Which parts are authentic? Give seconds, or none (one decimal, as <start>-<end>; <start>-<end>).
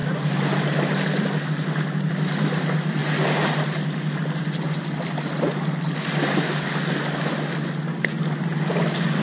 0.0-9.2